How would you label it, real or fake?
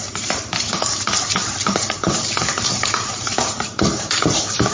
fake